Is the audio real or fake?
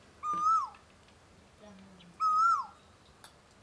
real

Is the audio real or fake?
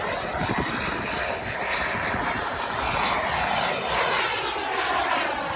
real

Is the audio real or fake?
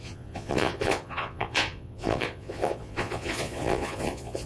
fake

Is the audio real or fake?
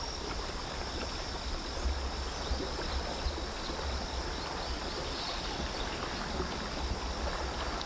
real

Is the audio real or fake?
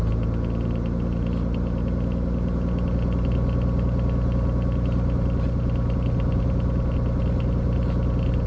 real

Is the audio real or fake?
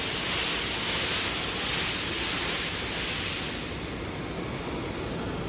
real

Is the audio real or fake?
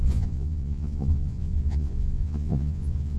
fake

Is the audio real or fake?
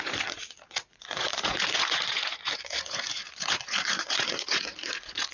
fake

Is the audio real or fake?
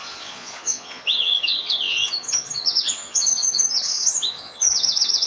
fake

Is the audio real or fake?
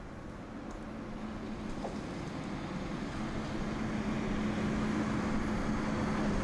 real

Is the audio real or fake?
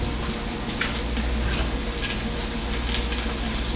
real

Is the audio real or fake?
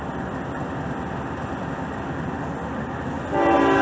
real